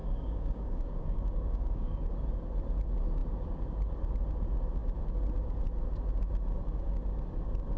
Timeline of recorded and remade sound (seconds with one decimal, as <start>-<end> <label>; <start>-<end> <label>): 0.0-2.1 remade; 2.1-7.8 recorded

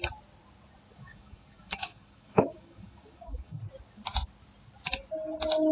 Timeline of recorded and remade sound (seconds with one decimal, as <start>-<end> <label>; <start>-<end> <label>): 0.0-0.9 recorded; 0.9-3.6 remade; 3.6-5.7 recorded

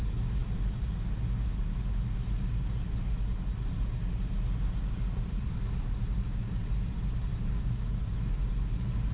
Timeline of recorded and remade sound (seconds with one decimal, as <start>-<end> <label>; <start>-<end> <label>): 0.0-7.3 recorded; 7.3-8.0 remade; 8.0-9.1 recorded

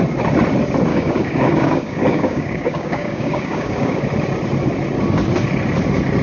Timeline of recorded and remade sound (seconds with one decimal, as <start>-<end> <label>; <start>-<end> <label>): 0.0-0.9 recorded; 0.9-4.0 remade; 4.0-6.2 recorded

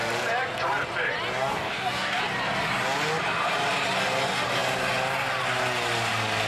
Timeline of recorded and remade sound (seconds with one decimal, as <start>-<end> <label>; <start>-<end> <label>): 0.0-1.4 recorded; 1.4-2.2 remade; 2.2-6.5 recorded

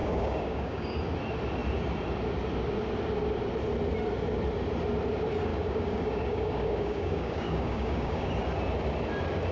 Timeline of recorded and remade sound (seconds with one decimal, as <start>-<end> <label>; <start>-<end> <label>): 0.0-1.0 remade; 1.0-5.5 recorded; 5.5-8.3 remade; 8.3-9.5 recorded

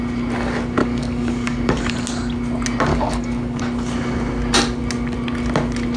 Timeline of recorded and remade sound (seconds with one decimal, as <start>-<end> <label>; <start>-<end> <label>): 0.0-0.8 recorded; 0.8-1.9 remade; 1.9-2.9 recorded; 2.9-3.6 remade; 3.6-6.0 recorded

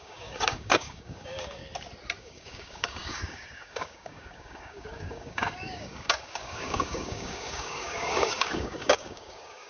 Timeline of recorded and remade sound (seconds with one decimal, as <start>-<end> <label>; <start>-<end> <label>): 0.0-1.6 remade; 1.6-2.2 recorded; 2.2-9.7 remade